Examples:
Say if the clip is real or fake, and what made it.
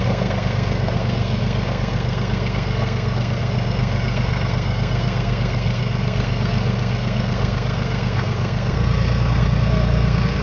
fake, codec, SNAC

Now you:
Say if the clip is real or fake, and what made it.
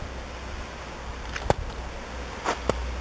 real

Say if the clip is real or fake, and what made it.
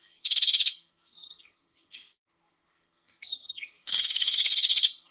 fake, codec, SNAC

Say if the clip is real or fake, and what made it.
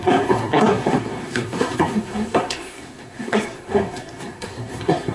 fake, codec, SNAC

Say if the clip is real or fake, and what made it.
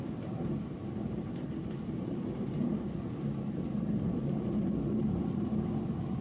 real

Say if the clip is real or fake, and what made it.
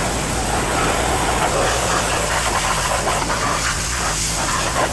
real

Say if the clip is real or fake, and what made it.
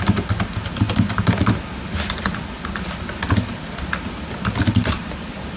real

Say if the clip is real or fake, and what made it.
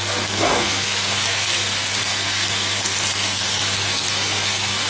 fake, codec, SNAC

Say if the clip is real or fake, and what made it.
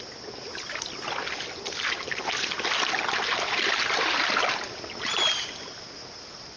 real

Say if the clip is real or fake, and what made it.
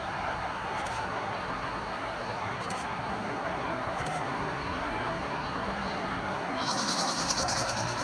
fake, codec, SNAC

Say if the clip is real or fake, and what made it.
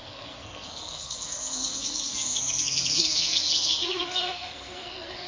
fake, codec, SNAC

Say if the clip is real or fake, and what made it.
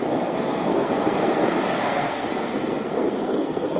fake, codec, SNAC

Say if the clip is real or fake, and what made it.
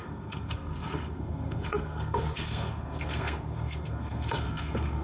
fake, codec, SNAC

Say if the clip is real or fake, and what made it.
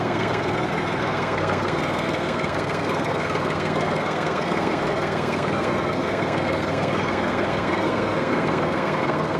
fake, codec, SNAC